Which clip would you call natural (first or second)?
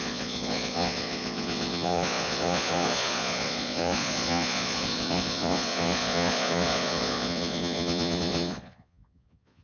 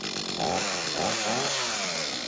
second